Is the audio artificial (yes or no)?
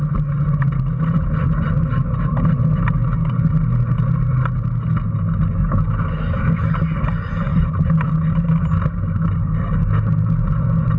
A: no